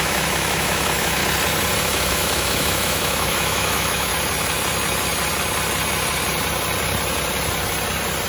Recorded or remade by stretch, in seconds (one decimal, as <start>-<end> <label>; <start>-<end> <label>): 0.0-1.2 remade; 1.2-1.8 recorded; 1.8-4.1 remade; 4.1-8.3 recorded